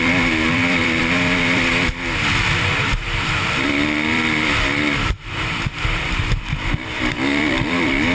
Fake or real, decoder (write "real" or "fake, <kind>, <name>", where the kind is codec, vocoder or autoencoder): fake, vocoder, BigVGAN v2